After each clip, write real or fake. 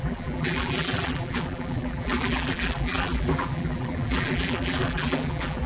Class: fake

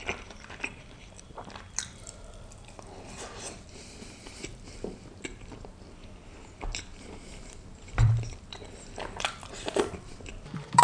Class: fake